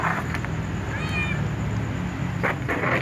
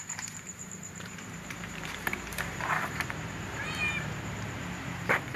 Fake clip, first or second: second